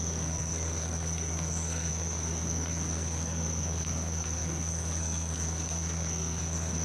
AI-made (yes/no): yes